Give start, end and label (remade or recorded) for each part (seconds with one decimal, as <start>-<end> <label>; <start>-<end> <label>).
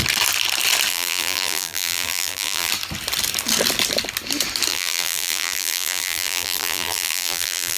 0.0-0.9 recorded; 0.9-2.7 remade; 2.7-4.7 recorded; 4.7-7.8 remade